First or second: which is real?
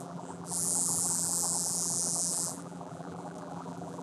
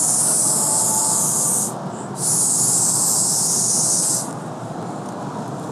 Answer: second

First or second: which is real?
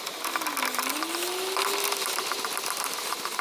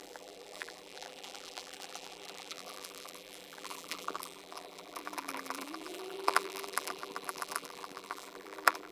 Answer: first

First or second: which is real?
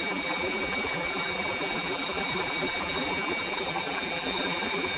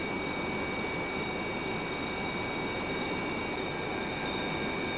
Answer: second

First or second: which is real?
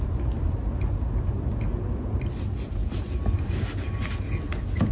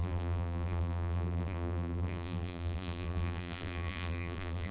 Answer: first